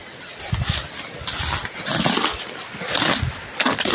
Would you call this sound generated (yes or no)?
no